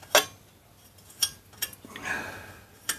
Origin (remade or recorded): recorded